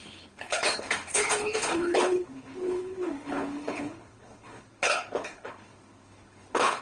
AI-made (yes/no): yes